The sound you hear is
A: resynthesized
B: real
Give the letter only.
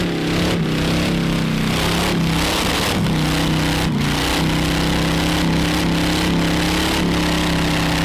B